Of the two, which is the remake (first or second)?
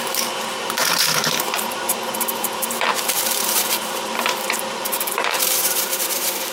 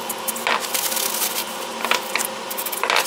first